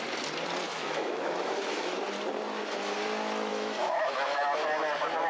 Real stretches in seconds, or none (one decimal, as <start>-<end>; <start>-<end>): 0.0-0.7; 2.0-3.5; 4.4-5.3